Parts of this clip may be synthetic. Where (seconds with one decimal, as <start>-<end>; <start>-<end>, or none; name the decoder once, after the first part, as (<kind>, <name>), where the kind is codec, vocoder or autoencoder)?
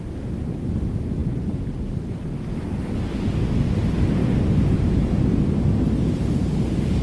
4.2-5.4 (vocoder, BigVGAN v2)